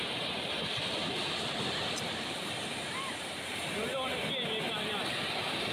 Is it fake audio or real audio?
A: real